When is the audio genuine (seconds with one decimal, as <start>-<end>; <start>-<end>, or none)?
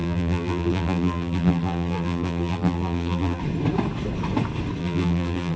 3.4-4.8